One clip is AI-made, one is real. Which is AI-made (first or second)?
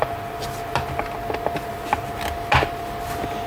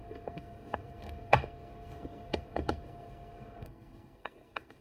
second